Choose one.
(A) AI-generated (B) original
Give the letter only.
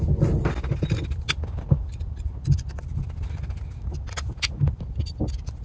B